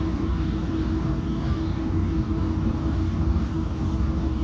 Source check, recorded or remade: remade